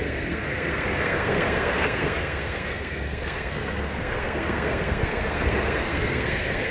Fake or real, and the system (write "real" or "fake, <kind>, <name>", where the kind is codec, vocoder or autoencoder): fake, codec, SNAC